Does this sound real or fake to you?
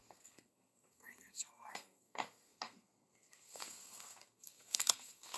fake